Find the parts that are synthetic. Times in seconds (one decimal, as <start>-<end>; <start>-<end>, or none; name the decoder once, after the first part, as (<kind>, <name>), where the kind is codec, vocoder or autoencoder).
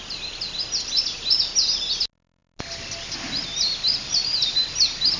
none